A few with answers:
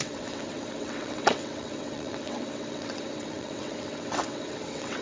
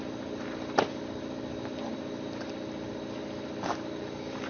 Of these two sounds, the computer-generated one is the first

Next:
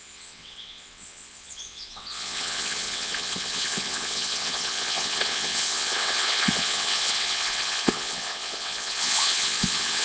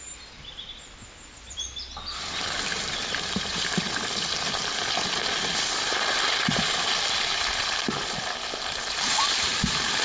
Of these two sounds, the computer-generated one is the first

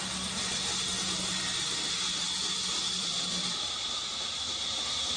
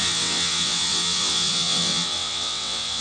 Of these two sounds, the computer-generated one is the second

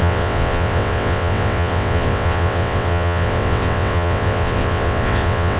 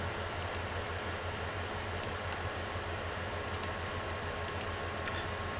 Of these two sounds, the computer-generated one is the first